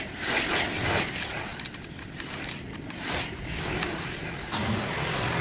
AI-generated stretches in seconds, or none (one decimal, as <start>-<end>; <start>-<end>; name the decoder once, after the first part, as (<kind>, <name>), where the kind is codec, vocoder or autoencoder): none

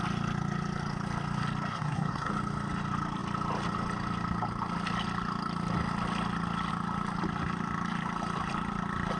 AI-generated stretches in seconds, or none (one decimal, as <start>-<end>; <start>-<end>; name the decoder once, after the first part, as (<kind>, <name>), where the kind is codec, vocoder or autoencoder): 1.7-2.3 (codec, SNAC)

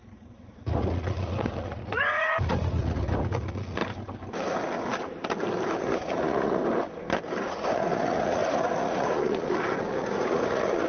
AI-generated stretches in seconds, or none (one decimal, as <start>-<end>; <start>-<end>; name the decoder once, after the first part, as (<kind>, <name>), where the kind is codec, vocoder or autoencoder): 0.0-3.8 (vocoder, Vocos); 5.8-6.6; 7.4-10.9